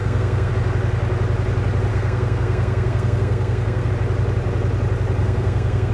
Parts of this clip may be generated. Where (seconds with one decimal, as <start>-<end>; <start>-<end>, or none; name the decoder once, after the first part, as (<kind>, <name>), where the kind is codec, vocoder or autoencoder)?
0.0-0.5 (codec, SNAC); 1.9-3.9; 5.2-5.9